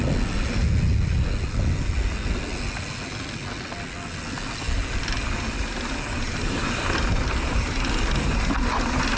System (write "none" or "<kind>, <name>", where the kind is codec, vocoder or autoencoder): none